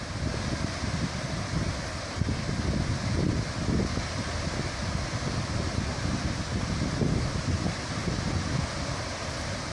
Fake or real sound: real